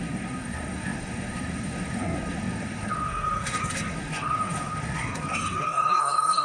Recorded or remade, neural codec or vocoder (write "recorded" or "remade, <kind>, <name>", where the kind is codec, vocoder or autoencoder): remade, codec, SNAC